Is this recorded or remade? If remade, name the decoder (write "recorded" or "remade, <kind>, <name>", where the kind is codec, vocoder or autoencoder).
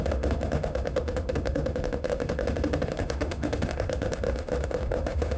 remade, autoencoder, DAC-VAE